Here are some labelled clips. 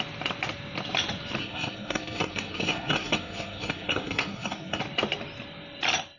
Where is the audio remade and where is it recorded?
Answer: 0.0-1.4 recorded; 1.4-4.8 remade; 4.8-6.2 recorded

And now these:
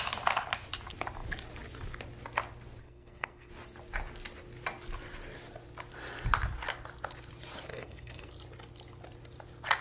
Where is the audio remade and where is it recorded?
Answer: 0.0-2.8 recorded; 2.8-3.5 remade; 3.5-7.7 recorded; 7.7-8.3 remade; 8.3-9.8 recorded